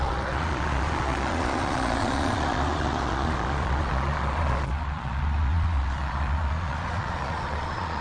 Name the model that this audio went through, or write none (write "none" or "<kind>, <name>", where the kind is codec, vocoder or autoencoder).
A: vocoder, Vocos